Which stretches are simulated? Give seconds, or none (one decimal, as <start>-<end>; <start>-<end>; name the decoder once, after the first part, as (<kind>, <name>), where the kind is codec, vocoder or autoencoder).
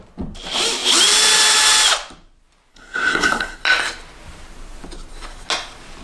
2.7-3.6 (codec, SNAC)